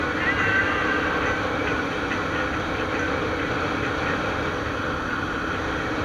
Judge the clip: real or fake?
real